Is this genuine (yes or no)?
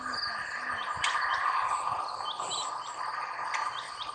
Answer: yes